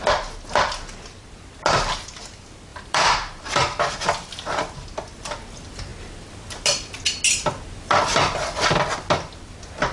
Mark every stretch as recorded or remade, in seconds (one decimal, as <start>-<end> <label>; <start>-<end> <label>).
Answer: 0.0-2.7 recorded; 2.7-3.8 remade; 3.8-9.9 recorded